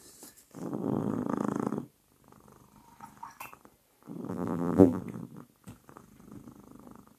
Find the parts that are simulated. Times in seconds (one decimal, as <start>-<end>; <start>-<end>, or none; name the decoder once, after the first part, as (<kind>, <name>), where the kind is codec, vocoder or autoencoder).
4.3-5.0 (vocoder, BigVGAN v2)